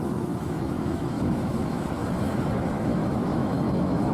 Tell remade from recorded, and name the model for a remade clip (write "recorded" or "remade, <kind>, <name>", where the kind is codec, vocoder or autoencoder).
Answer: remade, autoencoder, DAC-VAE